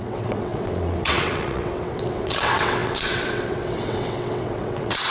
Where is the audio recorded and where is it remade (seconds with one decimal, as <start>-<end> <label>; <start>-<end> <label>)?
0.0-5.1 remade